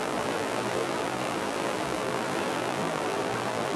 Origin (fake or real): fake